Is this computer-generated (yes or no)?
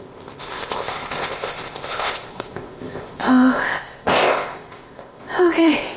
yes